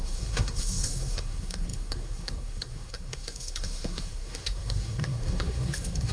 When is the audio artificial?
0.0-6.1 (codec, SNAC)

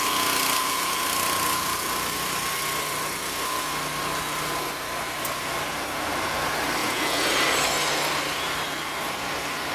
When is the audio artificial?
6.8-7.3 (vocoder, Vocos)

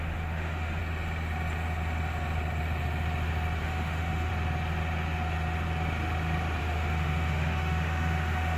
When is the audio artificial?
0.0-0.8 (autoencoder, DAC-VAE); 3.6-4.3; 6.6-8.6

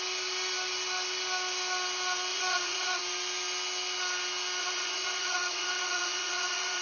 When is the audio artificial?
2.3-3.0 (vocoder, Vocos); 4.6-6.8

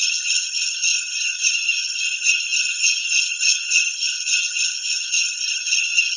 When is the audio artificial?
0.0-6.2 (vocoder, HiFi-GAN)

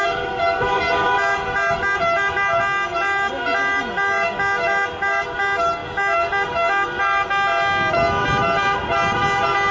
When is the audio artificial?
none